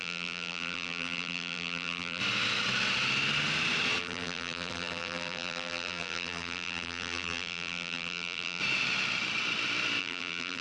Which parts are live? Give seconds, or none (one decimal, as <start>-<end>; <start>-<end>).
2.2-4.0; 8.6-10.0